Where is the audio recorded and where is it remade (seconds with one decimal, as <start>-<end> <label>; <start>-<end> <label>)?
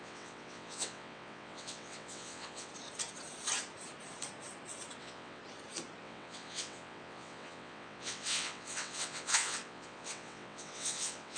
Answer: 0.0-2.7 remade; 2.7-5.0 recorded; 5.0-5.4 remade; 5.4-6.0 recorded; 6.0-11.4 remade